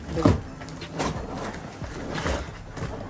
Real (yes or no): yes